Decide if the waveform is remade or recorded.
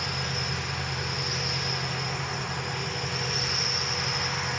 recorded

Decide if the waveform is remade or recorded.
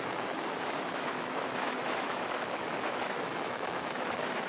remade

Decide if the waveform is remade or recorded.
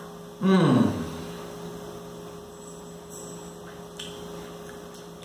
recorded